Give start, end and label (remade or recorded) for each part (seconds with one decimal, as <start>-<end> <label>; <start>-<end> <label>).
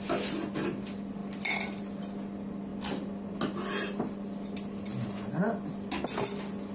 0.0-6.7 recorded